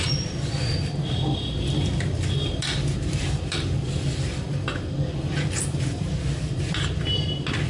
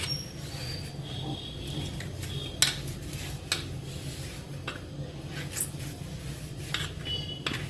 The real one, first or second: second